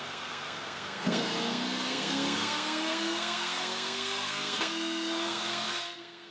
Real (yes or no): no